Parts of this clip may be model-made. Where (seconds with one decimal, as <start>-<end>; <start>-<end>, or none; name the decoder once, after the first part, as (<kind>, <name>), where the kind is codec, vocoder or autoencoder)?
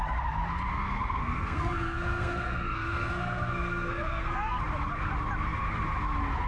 0.7-4.6 (codec, SNAC)